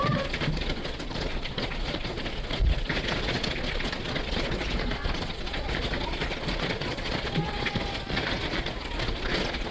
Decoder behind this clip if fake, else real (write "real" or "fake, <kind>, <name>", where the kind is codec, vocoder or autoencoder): fake, vocoder, Vocos